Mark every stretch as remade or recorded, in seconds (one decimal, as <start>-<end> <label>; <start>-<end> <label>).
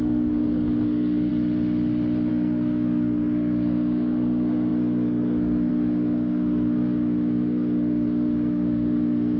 0.0-1.3 remade; 1.3-2.3 recorded; 2.3-9.4 remade